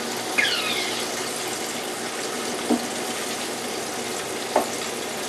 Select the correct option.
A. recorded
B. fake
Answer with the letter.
A